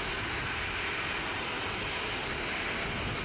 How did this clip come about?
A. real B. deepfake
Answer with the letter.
A